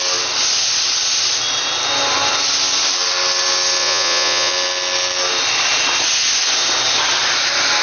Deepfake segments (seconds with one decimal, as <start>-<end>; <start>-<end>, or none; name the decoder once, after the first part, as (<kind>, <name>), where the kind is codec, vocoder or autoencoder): 3.8-4.5 (vocoder, Vocos)